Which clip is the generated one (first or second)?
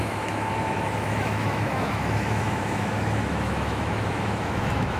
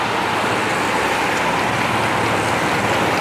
first